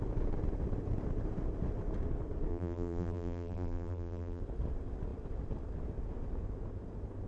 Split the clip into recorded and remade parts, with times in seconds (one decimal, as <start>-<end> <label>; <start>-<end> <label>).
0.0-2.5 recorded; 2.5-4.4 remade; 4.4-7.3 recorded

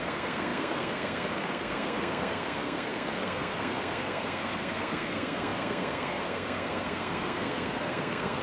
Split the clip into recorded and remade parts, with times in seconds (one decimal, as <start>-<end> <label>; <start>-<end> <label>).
0.0-8.4 remade

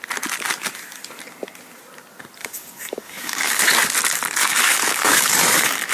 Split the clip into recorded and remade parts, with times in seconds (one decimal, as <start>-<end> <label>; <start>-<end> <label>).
0.0-2.4 recorded; 2.4-3.6 remade; 3.6-4.4 recorded; 4.4-5.9 remade